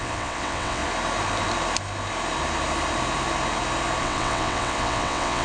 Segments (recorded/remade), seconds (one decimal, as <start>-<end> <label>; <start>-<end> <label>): 0.0-0.8 remade; 0.8-4.0 recorded; 4.0-5.4 remade